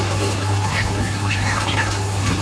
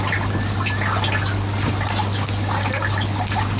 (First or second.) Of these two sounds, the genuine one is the second